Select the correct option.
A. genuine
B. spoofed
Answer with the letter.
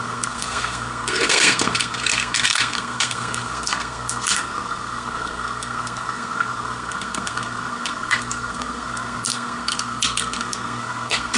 B